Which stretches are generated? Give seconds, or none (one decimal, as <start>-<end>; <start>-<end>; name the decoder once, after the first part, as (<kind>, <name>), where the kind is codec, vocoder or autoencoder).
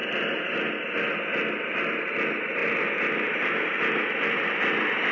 none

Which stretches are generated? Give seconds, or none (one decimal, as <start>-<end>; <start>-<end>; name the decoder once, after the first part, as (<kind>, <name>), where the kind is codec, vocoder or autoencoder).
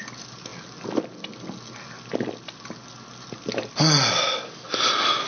none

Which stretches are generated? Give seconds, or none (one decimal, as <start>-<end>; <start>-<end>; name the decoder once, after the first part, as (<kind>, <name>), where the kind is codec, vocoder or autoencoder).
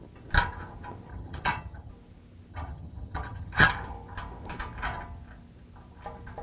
1.1-1.9 (vocoder, HiFi-GAN); 2.5-3.7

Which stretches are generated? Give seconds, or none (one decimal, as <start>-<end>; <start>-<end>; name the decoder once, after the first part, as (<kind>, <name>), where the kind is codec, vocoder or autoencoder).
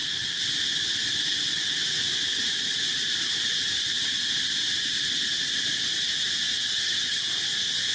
6.7-7.2 (vocoder, HiFi-GAN)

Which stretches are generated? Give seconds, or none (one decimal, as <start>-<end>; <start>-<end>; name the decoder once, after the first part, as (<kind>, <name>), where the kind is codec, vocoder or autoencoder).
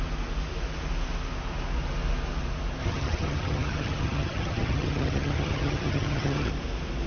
2.8-6.5 (vocoder, HiFi-GAN)